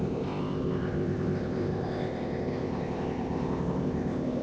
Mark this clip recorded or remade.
remade